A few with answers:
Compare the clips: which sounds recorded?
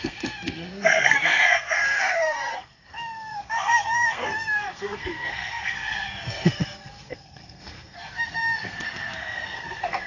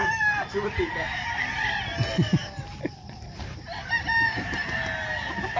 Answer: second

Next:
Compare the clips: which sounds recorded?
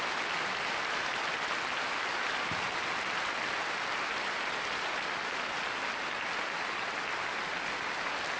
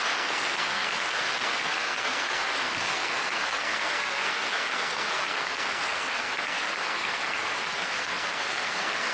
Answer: first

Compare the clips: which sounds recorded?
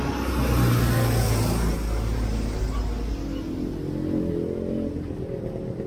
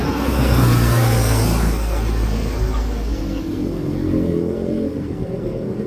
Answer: first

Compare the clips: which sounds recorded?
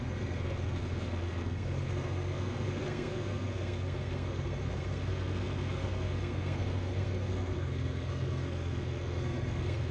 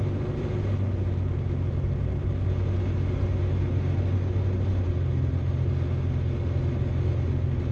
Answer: second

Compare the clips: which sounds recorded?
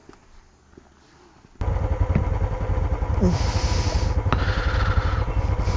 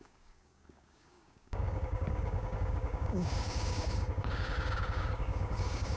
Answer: first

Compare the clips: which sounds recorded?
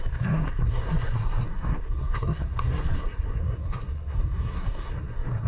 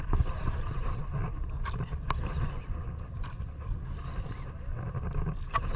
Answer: second